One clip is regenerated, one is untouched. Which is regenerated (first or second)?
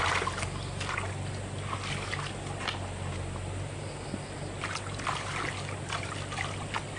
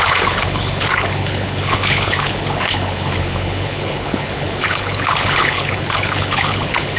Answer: second